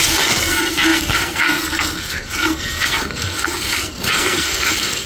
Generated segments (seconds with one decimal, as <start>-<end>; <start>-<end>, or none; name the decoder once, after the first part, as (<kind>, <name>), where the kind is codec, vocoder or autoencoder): 0.0-5.1 (codec, SNAC)